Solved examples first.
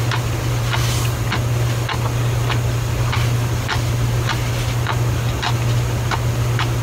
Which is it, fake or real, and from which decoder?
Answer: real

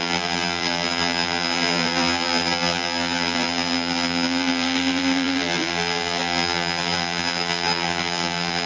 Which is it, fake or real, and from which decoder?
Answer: fake, vocoder, BigVGAN v2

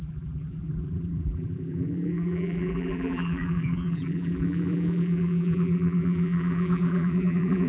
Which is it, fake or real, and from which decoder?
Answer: fake, vocoder, BigVGAN v2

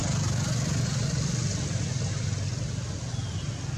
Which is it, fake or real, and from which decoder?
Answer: real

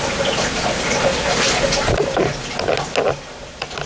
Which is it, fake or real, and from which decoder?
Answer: real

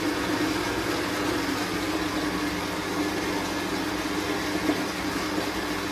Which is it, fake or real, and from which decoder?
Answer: real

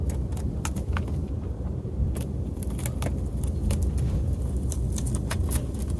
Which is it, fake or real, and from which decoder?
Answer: real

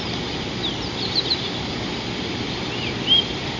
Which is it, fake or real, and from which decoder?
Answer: real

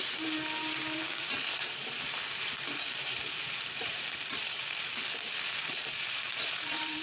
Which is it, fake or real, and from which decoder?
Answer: fake, vocoder, BigVGAN v2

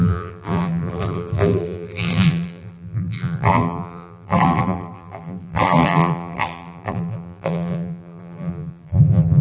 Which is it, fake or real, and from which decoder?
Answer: fake, vocoder, BigVGAN v2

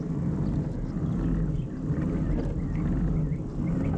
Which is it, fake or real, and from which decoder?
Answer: real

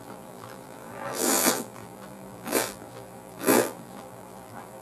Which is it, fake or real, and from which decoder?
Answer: fake, vocoder, BigVGAN v2